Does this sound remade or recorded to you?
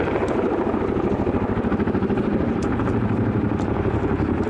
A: remade